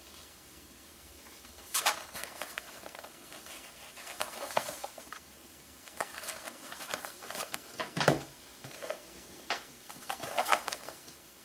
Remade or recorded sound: remade